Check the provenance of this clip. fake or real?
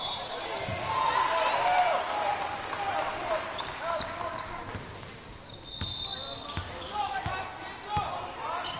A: real